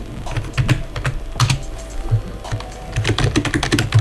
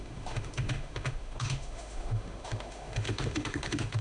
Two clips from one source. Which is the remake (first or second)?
second